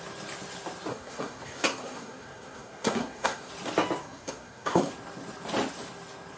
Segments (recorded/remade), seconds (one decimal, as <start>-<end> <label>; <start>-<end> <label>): 0.0-0.9 recorded; 0.9-3.5 remade; 3.5-4.0 recorded; 4.0-4.9 remade; 4.9-6.4 recorded